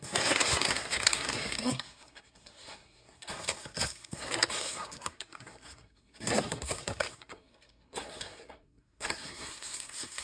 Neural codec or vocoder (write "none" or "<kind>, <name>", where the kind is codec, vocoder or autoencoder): codec, SNAC